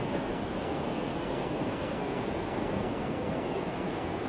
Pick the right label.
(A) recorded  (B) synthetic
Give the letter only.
B